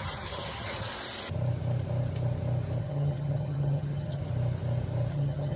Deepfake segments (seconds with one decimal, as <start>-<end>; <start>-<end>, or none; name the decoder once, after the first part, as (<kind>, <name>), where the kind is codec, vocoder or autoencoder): 0.0-0.9 (vocoder, HiFi-GAN); 2.8-4.2; 5.1-5.6

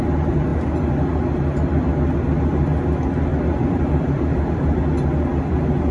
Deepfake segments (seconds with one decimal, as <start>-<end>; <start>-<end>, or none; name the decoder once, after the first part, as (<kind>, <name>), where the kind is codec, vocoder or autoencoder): 3.3-4.8 (vocoder, BigVGAN v2)

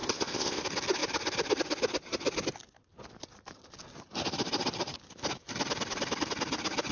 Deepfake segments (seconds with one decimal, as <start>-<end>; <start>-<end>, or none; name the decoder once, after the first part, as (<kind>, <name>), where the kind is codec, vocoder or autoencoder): 0.0-0.6 (codec, ZipCodec)

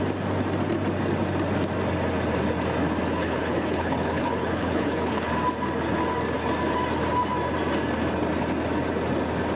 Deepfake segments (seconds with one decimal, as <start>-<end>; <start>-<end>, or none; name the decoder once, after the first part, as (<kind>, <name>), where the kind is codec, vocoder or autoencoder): 3.2-5.3 (codec, HILCodec)

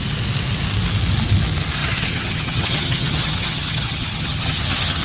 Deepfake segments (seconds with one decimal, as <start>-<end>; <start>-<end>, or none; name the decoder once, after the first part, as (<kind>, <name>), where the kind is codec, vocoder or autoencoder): 1.8-5.0 (vocoder, HiFi-GAN)